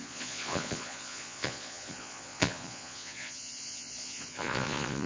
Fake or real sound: fake